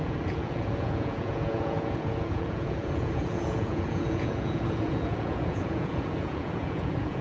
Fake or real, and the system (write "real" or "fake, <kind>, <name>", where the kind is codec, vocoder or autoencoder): fake, vocoder, Vocos